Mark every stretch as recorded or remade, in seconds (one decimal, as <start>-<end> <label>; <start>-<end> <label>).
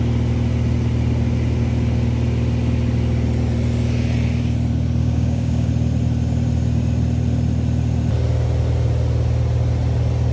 0.0-5.0 recorded; 5.0-5.7 remade; 5.7-10.3 recorded